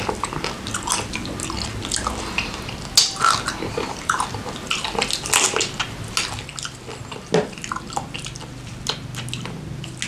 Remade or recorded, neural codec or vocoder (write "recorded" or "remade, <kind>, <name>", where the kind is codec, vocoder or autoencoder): recorded